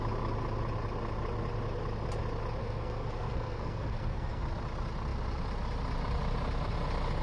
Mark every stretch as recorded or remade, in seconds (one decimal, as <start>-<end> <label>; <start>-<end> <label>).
0.0-2.6 recorded; 2.6-4.4 remade; 4.4-7.2 recorded